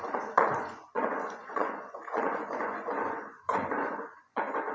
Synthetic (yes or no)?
yes